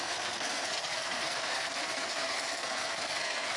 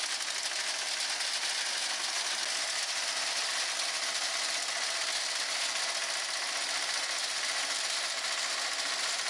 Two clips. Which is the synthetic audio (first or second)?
first